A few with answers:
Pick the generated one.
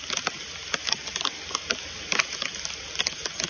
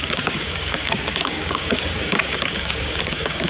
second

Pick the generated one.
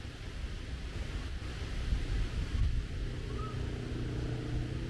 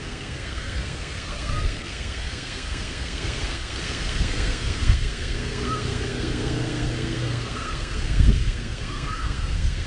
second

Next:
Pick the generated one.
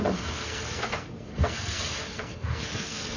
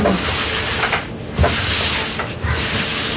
first